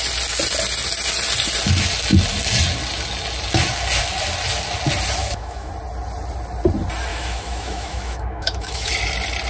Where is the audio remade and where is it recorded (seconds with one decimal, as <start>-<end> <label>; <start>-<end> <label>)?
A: 0.0-5.2 recorded; 5.2-5.7 remade; 5.7-7.1 recorded; 7.1-8.9 remade; 8.9-9.5 recorded